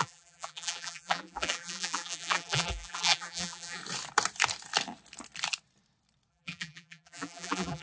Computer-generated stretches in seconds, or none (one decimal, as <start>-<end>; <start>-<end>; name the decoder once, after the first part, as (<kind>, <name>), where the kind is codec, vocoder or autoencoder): 0.0-3.8 (vocoder, BigVGAN v2); 6.3-7.8